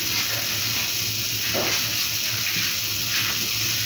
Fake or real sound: real